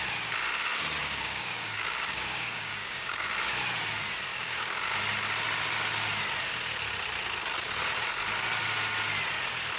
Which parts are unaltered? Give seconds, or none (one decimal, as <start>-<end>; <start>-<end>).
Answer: 0.0-1.0; 3.3-4.3; 4.8-9.8